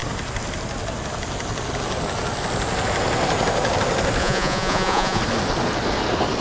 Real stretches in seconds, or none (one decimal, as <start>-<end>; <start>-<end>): 0.0-4.2; 5.2-6.4